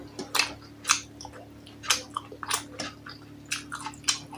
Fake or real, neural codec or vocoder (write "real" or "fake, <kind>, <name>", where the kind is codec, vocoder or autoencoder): real